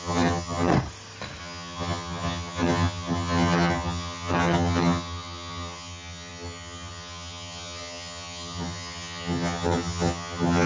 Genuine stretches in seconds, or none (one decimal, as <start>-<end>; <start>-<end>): 0.7-1.4